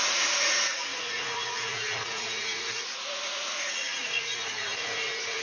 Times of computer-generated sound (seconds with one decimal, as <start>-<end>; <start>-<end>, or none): 0.0-5.4